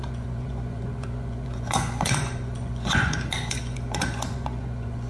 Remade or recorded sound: remade